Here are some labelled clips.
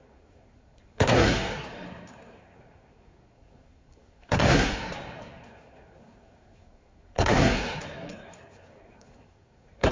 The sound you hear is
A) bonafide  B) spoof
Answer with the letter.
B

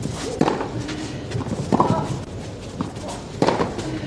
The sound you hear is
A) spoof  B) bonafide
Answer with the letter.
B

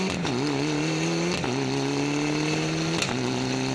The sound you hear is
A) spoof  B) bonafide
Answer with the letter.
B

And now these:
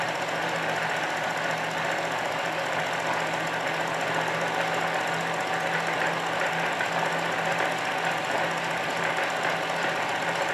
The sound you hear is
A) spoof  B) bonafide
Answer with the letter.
B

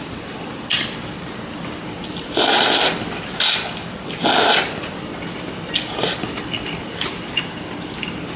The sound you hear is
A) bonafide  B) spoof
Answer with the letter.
A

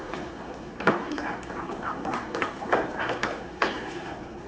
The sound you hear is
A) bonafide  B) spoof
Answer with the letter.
B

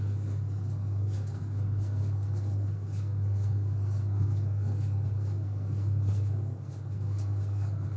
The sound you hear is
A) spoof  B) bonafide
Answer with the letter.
A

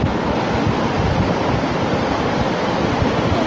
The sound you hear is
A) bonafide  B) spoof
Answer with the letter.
A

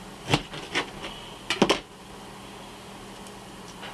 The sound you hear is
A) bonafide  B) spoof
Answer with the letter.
A